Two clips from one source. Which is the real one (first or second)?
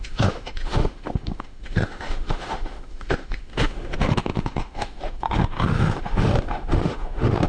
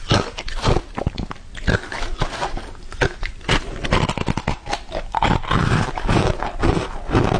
second